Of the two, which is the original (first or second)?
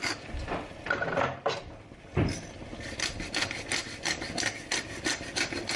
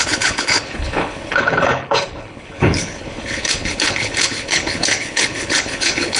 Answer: first